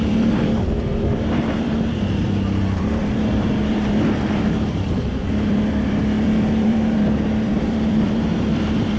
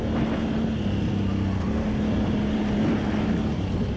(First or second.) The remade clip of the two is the first